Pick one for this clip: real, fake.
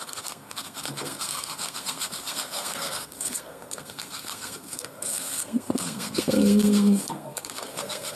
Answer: fake